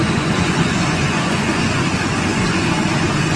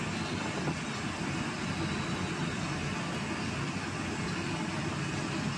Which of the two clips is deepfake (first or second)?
first